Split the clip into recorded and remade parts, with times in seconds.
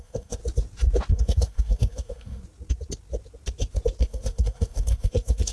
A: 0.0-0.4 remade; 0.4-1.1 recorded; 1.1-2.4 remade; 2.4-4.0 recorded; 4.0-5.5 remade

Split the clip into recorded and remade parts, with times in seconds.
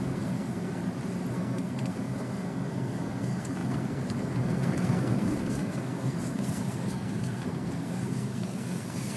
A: 0.0-0.8 remade; 0.8-1.3 recorded; 1.3-9.2 remade